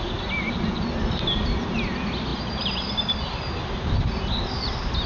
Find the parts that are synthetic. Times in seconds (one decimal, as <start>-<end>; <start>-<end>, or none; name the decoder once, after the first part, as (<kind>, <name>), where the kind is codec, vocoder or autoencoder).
2.3-2.9 (vocoder, BigVGAN v2)